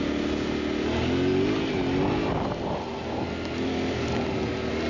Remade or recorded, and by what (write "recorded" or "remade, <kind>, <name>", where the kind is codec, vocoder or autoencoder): recorded